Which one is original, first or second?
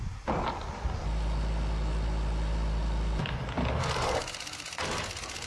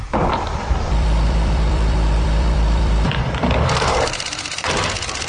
first